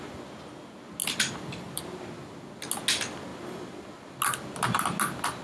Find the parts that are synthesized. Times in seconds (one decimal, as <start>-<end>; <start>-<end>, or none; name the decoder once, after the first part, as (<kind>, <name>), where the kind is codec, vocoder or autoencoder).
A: 1.0-1.8 (vocoder, BigVGAN v2)